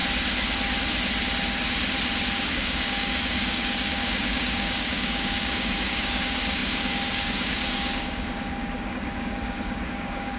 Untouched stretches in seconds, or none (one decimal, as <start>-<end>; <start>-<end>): 0.0-2.5